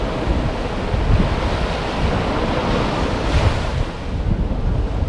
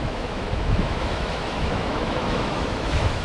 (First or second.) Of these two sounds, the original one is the first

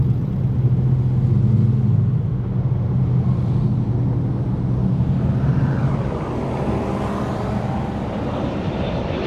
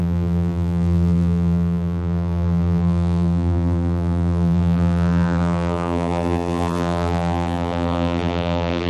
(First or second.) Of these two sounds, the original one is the first